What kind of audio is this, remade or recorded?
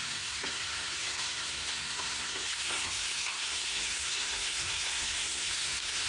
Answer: remade